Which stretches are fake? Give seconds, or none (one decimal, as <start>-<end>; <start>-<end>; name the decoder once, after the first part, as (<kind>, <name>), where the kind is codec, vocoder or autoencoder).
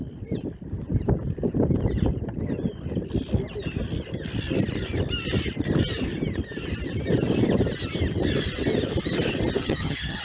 9.6-10.2 (vocoder, HiFi-GAN)